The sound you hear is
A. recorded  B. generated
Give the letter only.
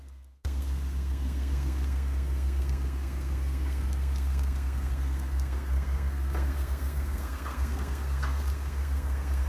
B